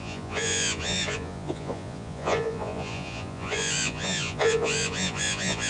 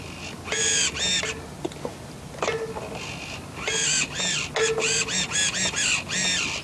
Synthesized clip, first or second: first